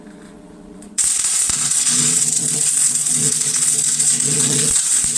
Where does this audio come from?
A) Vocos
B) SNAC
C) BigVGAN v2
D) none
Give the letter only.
A